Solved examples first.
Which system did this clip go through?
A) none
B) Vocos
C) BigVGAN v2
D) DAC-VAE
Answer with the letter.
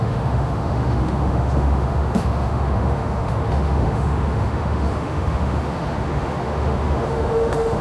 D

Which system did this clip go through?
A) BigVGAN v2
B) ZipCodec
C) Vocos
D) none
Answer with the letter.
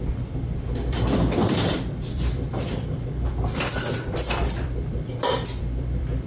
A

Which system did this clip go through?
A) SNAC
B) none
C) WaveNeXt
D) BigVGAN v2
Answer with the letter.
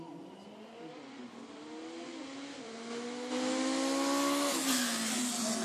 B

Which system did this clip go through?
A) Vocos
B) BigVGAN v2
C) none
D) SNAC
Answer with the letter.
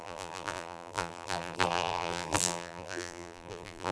B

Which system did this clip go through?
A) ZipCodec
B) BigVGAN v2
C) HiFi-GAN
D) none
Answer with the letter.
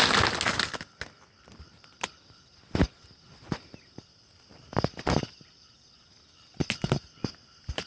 D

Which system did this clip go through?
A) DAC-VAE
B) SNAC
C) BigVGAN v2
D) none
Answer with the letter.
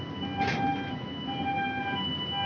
D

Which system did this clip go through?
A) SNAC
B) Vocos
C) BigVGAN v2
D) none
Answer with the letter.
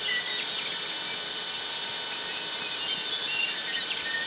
D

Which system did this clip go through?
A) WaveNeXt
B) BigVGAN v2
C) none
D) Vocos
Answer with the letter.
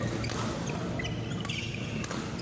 C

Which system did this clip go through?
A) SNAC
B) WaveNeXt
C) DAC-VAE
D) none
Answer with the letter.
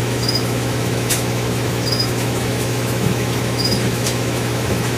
C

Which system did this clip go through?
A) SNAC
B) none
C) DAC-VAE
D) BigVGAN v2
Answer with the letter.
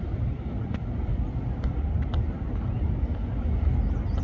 B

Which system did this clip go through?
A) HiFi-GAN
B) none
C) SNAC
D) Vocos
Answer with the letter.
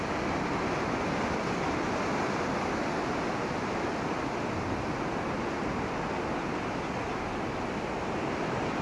B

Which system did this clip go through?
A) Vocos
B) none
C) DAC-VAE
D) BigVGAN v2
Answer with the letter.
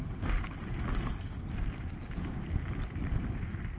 B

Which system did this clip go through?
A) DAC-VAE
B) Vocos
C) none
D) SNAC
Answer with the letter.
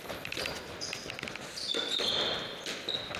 C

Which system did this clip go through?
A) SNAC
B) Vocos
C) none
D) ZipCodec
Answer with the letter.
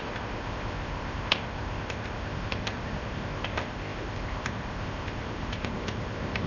D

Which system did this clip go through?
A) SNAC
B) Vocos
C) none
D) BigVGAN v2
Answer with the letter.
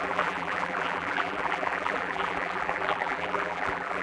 D